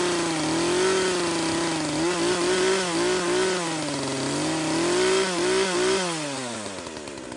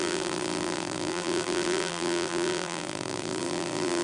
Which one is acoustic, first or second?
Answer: first